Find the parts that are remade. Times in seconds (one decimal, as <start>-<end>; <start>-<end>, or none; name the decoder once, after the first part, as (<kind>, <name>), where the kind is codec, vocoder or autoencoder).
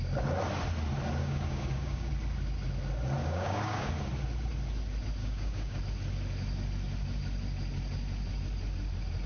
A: 1.2-2.1 (codec, DAC); 3.2-3.9; 5.2-5.8